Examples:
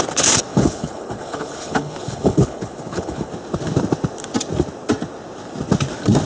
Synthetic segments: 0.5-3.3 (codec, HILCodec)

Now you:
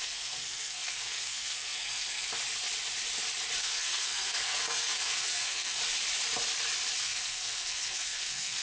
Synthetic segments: 0.0-2.3 (codec, SNAC); 3.6-5.8; 7.0-8.6

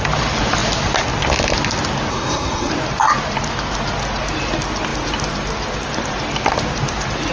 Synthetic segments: 2.1-2.7 (codec, SNAC)